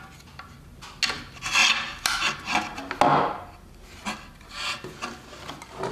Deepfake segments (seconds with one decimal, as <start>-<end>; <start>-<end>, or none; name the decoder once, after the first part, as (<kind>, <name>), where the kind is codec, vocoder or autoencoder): none